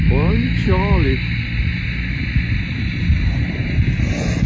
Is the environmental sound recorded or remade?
recorded